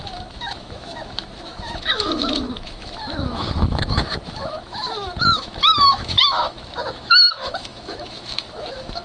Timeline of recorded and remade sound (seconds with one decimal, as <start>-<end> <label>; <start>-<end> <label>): 0.0-9.0 remade